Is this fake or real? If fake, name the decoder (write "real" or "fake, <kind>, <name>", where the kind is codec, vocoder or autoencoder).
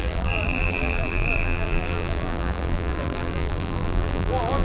fake, vocoder, BigVGAN v2